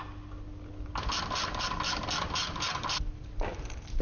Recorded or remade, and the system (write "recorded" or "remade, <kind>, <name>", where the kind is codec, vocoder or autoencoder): recorded